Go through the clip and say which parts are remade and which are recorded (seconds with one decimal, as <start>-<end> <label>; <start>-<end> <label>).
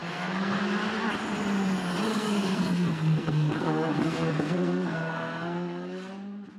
0.0-0.6 remade; 0.6-2.1 recorded; 2.1-6.1 remade; 6.1-6.6 recorded